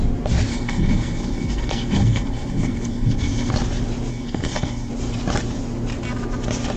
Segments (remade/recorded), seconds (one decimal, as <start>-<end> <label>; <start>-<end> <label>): 0.0-0.5 recorded; 0.5-3.5 remade; 3.5-4.1 recorded; 4.1-4.9 remade; 4.9-6.8 recorded